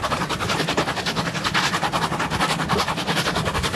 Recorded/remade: recorded